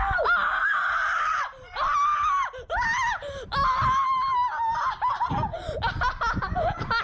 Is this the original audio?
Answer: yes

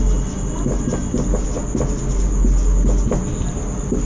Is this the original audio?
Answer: yes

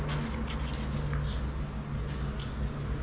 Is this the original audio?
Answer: yes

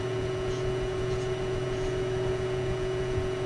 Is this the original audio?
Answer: no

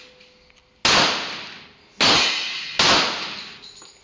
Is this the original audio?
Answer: yes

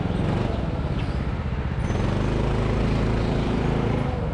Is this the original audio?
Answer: yes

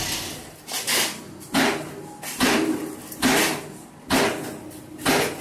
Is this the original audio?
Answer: yes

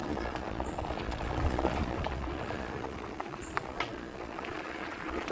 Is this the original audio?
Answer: no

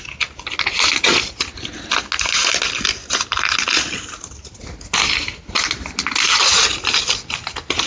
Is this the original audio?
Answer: yes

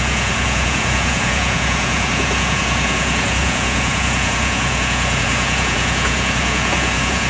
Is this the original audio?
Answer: no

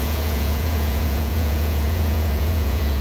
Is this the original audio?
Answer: no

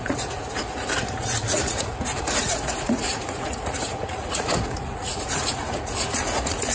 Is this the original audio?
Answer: no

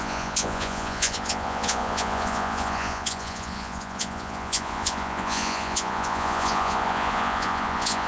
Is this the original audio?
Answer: no